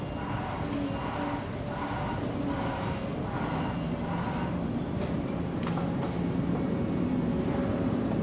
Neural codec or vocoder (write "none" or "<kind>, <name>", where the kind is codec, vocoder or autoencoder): none